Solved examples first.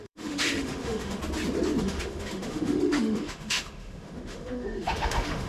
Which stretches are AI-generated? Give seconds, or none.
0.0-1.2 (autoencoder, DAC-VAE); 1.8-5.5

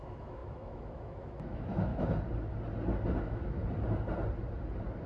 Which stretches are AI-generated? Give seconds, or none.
0.0-1.9 (autoencoder, DAC-VAE); 3.2-3.6

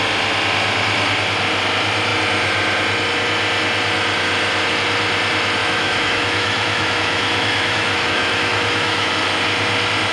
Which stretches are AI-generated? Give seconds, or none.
5.6-9.1 (autoencoder, DAC-VAE)